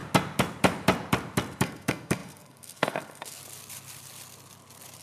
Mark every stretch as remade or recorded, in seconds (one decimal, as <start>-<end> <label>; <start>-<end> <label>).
0.0-1.6 recorded; 1.6-3.4 remade; 3.4-5.0 recorded